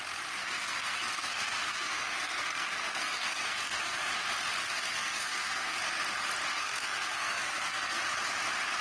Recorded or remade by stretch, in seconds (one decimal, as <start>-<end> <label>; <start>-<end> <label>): 0.0-0.4 recorded; 0.4-4.1 remade; 4.1-4.6 recorded; 4.6-5.8 remade; 5.8-6.5 recorded; 6.5-8.0 remade; 8.0-8.8 recorded